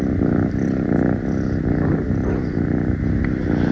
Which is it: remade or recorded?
recorded